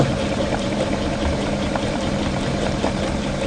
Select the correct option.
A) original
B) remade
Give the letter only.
B